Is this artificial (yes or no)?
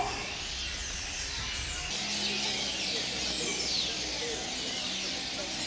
no